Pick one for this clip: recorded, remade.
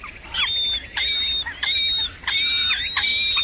recorded